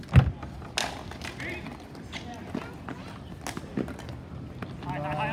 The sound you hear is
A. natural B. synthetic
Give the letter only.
A